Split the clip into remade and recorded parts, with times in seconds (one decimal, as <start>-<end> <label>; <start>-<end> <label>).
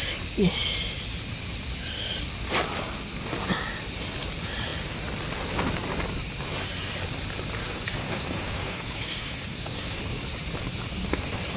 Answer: 0.0-7.6 recorded; 7.6-10.0 remade; 10.0-11.6 recorded